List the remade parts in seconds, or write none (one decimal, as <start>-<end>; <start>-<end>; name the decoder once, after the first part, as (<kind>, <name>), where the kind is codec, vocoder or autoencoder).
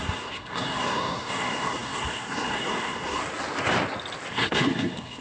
0.0-3.2 (codec, SNAC); 4.3-5.2